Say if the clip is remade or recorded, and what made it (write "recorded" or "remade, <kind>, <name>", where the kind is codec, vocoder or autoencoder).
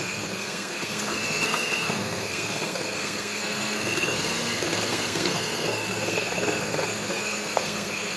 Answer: remade, codec, SNAC